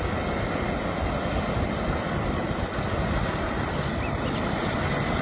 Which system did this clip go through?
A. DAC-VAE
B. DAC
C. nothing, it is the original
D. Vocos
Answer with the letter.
C